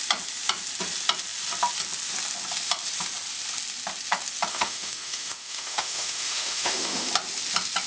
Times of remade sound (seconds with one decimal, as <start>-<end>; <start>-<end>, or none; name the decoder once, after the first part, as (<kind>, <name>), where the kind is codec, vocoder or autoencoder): 4.5-7.1 (autoencoder, DAC-VAE)